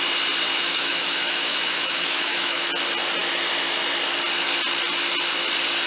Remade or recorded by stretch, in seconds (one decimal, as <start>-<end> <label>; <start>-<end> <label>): 0.0-0.5 recorded; 0.5-2.6 remade; 2.6-5.9 recorded

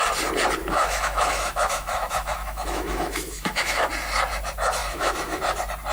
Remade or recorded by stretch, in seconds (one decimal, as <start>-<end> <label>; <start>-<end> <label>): 0.0-0.6 recorded; 0.6-3.9 remade; 3.9-4.8 recorded; 4.8-5.4 remade; 5.4-5.9 recorded

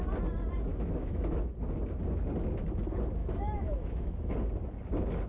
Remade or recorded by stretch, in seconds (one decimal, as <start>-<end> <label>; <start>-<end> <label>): 0.0-0.7 recorded; 0.7-1.5 remade; 1.5-3.2 recorded; 3.2-4.3 remade; 4.3-5.3 recorded

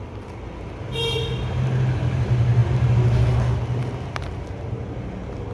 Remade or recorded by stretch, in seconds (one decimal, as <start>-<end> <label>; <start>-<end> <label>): 0.0-5.5 recorded

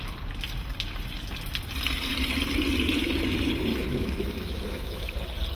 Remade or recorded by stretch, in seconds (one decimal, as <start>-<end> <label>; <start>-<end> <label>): 0.0-3.7 recorded; 3.7-5.1 remade; 5.1-5.5 recorded

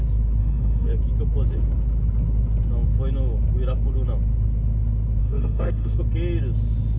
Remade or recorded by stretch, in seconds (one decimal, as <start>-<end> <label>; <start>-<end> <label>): 0.0-0.4 recorded; 0.4-0.9 remade; 0.9-5.2 recorded; 5.2-6.0 remade; 6.0-7.0 recorded

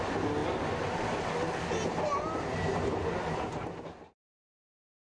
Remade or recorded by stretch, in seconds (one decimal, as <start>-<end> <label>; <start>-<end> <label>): 0.0-5.0 recorded